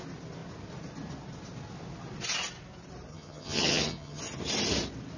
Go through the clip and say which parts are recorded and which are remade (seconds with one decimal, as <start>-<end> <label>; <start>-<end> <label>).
0.0-3.1 recorded; 3.1-4.2 remade; 4.2-5.2 recorded